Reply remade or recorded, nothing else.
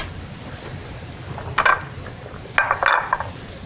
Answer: recorded